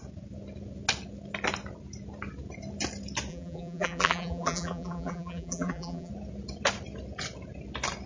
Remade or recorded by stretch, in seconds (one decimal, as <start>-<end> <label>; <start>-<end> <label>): 0.0-3.3 recorded; 3.3-6.1 remade; 6.1-8.1 recorded